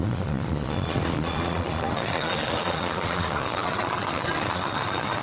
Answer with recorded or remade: remade